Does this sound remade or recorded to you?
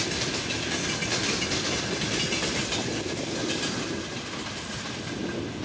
recorded